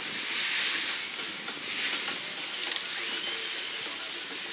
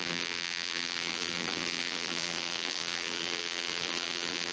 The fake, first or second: second